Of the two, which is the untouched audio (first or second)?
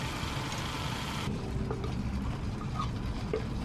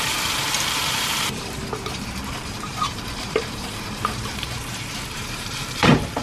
first